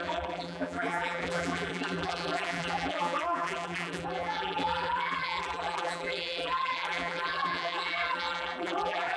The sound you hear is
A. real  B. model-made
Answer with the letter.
B